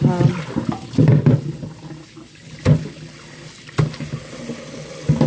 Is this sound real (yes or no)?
yes